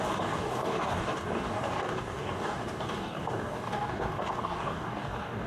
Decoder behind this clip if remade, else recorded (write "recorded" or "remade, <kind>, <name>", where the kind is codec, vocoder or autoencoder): remade, codec, DAC